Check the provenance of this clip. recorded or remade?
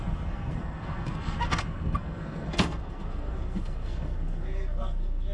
remade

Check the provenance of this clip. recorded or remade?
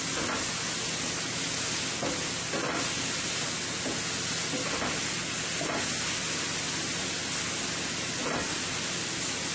recorded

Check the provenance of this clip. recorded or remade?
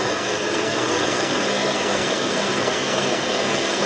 remade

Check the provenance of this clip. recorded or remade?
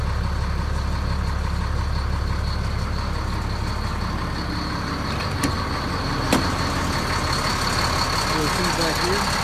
recorded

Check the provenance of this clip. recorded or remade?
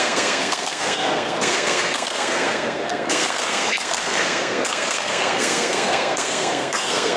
remade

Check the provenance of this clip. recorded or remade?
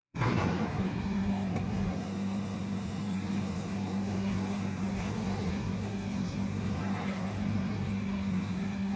remade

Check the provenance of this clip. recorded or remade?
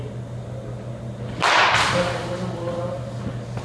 recorded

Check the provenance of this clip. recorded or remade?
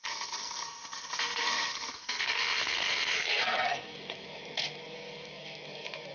remade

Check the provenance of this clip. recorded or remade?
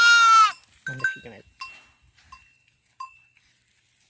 recorded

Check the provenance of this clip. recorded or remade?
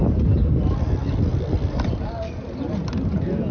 recorded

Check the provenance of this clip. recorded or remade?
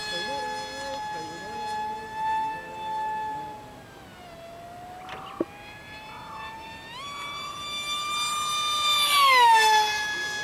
recorded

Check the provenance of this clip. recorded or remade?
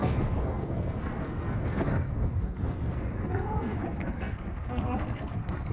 remade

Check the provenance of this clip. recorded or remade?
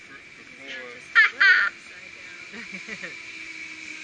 recorded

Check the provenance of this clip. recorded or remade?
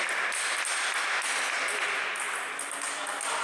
recorded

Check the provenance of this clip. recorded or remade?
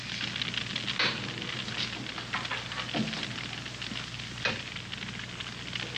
recorded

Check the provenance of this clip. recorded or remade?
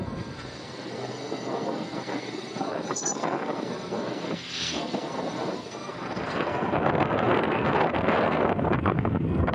remade